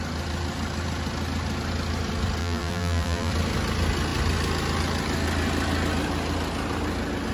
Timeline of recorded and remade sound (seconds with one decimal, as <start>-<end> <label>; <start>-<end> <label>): 0.0-2.4 recorded; 2.4-3.3 remade; 3.3-7.3 recorded